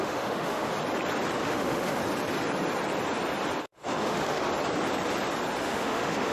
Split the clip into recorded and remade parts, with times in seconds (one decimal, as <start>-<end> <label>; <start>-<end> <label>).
0.0-0.7 remade; 0.7-1.4 recorded; 1.4-2.0 remade; 2.0-3.6 recorded; 3.6-4.5 remade; 4.5-5.6 recorded; 5.6-6.3 remade